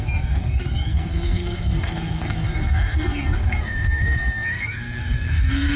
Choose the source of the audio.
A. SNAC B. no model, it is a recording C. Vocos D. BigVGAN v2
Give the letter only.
A